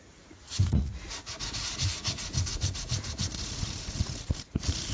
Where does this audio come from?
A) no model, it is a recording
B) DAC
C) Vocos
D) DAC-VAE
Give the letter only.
C